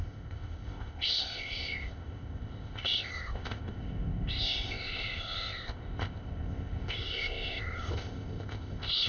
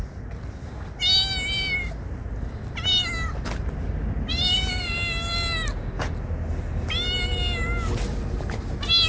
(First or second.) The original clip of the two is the second